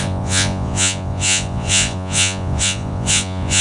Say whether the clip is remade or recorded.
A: remade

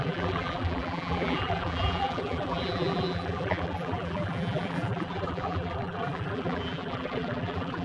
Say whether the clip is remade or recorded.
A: remade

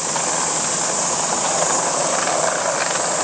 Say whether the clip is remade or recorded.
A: remade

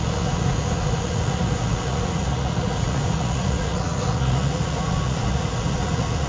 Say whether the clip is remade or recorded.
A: remade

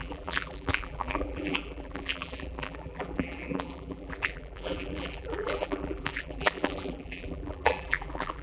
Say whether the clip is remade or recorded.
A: remade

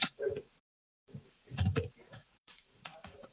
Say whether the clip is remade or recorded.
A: remade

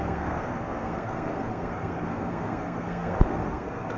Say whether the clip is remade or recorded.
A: remade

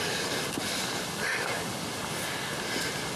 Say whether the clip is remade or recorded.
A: recorded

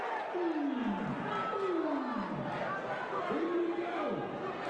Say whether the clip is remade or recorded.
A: recorded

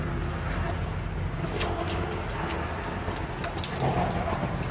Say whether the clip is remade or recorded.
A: recorded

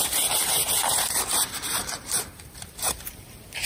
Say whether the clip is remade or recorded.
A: remade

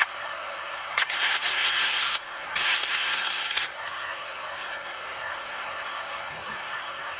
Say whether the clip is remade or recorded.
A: remade